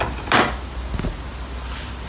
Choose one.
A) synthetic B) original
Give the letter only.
B